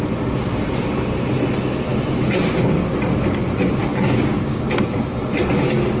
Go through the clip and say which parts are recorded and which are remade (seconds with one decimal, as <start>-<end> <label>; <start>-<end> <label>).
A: 0.0-3.9 recorded; 3.9-4.6 remade; 4.6-6.0 recorded